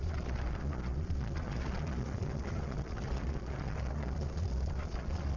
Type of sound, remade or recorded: remade